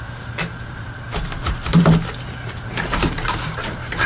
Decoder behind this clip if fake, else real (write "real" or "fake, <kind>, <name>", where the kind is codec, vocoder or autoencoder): fake, vocoder, BigVGAN v2